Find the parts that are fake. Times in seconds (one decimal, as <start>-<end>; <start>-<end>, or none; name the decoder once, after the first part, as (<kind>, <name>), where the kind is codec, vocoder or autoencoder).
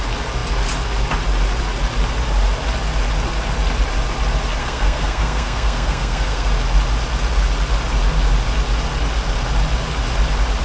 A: 4.6-6.5 (codec, SNAC)